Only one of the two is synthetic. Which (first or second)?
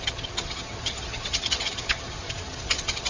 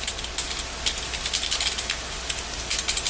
first